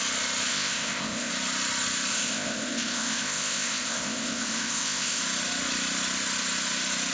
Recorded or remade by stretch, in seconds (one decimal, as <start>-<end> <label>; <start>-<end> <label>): 0.0-0.5 recorded; 0.5-1.3 remade; 1.3-2.1 recorded; 2.1-5.2 remade; 5.2-7.1 recorded